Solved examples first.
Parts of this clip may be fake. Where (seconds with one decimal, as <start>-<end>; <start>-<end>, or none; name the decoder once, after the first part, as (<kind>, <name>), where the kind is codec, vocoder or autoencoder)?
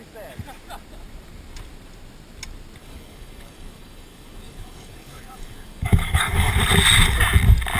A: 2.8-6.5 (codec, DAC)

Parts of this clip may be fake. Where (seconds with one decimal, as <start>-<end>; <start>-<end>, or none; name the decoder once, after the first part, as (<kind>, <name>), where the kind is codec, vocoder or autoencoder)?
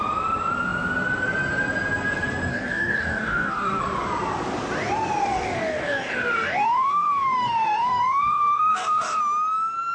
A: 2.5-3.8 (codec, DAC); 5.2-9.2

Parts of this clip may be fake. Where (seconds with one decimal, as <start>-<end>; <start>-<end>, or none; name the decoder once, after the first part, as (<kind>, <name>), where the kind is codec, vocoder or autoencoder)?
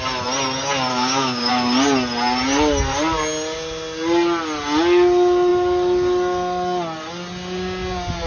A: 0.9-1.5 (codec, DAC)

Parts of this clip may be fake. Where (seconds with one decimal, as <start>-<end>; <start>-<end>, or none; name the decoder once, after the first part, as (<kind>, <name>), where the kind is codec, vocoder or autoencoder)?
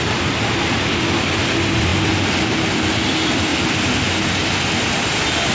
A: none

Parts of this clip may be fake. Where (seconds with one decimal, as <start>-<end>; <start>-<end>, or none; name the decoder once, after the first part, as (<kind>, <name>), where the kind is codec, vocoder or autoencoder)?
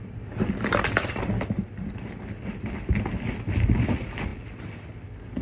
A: none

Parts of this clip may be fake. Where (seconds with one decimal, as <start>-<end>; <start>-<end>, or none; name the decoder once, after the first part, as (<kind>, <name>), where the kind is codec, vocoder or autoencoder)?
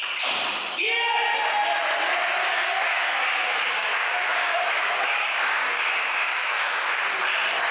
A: 2.4-7.0 (codec, DAC)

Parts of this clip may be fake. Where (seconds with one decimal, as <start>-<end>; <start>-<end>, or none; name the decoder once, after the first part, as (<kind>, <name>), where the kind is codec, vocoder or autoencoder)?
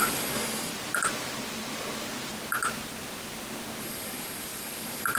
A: 0.0-0.7 (codec, DAC); 3.8-5.2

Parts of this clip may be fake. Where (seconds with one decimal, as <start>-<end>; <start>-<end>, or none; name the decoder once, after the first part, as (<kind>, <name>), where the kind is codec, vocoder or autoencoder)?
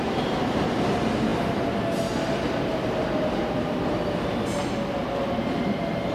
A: none